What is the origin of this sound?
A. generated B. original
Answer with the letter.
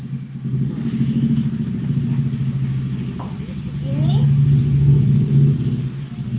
B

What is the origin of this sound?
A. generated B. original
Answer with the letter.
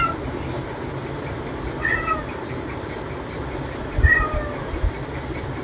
B